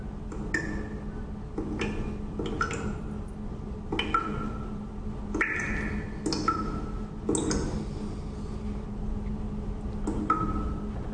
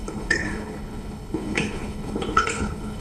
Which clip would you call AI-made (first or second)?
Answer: second